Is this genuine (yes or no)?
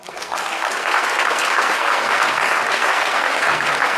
no